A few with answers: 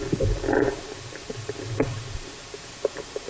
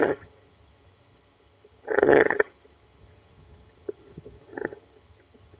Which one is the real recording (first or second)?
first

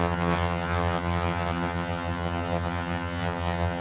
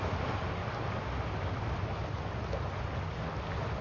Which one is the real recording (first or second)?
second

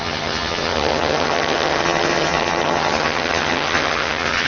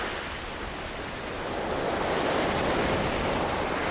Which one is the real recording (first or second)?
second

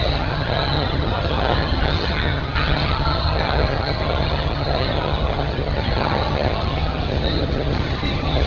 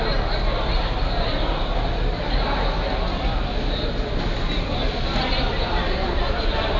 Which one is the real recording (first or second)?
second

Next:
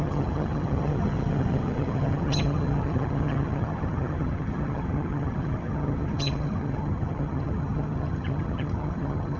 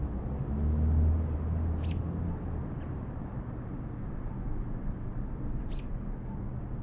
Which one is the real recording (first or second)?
second